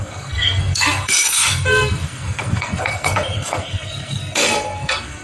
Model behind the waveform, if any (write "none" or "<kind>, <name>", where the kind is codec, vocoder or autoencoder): codec, SNAC